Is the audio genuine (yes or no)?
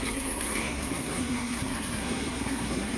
no